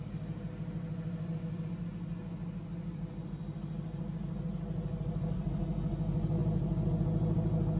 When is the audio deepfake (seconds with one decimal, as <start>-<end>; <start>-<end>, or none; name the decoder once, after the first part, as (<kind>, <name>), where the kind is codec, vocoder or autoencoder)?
none